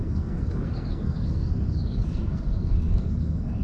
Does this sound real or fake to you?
fake